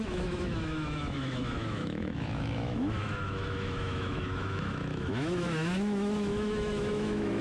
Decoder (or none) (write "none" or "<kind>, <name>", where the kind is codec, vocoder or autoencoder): autoencoder, DAC-VAE